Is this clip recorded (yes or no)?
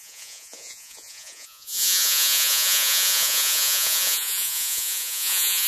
no